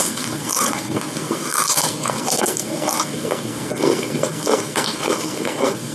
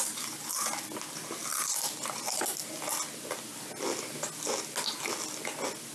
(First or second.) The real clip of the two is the second